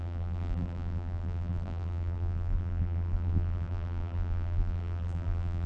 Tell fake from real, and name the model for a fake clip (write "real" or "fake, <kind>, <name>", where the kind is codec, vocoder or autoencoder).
fake, vocoder, BigVGAN v2